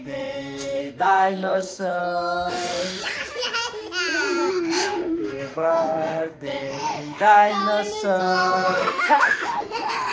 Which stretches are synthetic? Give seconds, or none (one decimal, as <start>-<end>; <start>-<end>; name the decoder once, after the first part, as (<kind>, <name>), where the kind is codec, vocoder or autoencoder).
0.0-2.0 (autoencoder, DAC-VAE); 2.5-3.0; 4.5-7.6; 8.2-10.1